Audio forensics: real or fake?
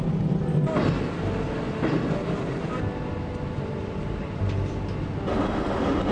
real